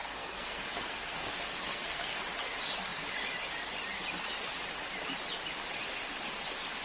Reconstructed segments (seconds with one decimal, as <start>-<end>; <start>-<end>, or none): 0.0-2.2